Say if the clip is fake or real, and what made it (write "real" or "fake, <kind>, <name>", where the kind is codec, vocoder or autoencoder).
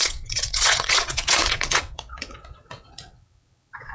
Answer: fake, vocoder, WaveNeXt